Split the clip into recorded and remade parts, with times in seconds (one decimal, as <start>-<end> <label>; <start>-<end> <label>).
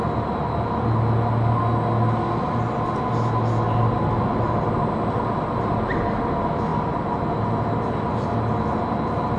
0.0-9.4 recorded